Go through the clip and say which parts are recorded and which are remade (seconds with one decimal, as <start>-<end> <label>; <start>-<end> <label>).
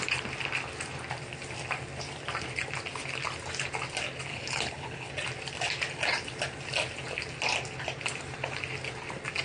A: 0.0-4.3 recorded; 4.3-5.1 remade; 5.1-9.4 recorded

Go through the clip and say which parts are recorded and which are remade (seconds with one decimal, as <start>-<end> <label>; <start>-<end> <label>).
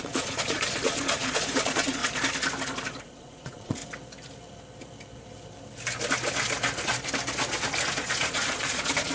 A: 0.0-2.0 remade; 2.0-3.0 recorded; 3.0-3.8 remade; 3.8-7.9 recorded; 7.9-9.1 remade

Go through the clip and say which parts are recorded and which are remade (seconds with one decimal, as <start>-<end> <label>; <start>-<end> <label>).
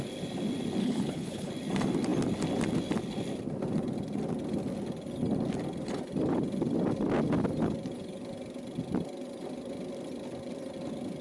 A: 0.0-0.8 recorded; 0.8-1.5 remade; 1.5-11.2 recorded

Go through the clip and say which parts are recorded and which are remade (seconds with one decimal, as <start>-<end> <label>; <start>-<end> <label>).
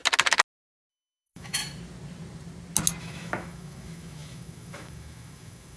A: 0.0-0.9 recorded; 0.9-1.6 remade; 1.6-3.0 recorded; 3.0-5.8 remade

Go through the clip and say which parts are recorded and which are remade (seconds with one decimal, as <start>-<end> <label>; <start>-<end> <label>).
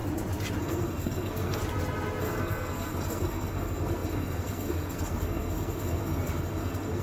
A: 0.0-0.6 recorded; 0.6-1.6 remade; 1.6-2.2 recorded; 2.2-7.0 remade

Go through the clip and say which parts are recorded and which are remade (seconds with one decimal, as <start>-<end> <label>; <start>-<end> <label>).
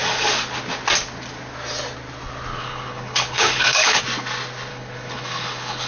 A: 0.0-2.5 recorded; 2.5-4.0 remade; 4.0-4.7 recorded; 4.7-5.9 remade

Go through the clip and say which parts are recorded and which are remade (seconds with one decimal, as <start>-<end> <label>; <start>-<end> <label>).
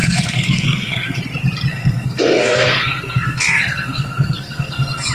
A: 0.0-1.2 remade; 1.2-1.7 recorded; 1.7-5.1 remade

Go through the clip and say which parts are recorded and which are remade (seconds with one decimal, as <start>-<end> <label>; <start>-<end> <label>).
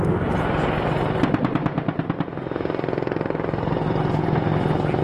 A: 0.0-5.0 recorded